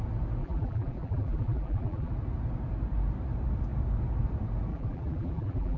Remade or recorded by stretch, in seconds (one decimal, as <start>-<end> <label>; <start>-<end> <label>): 0.0-0.4 recorded; 0.4-2.1 remade; 2.1-4.7 recorded; 4.7-5.8 remade